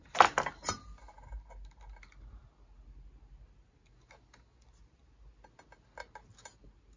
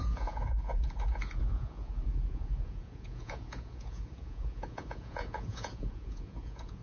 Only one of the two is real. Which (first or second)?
first